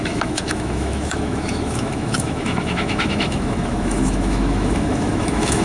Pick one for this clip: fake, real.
fake